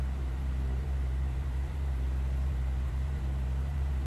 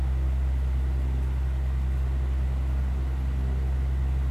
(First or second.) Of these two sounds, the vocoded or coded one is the first